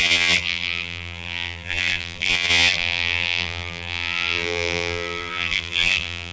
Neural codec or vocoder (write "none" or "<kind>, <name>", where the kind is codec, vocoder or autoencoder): vocoder, BigVGAN v2